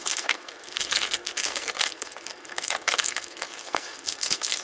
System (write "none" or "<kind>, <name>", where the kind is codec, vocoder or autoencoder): codec, SNAC